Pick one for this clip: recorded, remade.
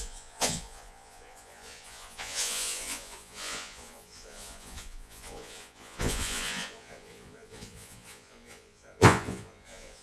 remade